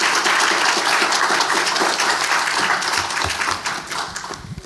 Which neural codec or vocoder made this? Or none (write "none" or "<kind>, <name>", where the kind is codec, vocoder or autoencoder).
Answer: none